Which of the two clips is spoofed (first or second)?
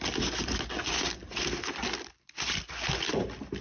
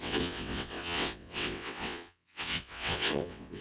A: second